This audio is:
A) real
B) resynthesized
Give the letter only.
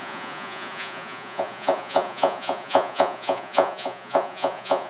B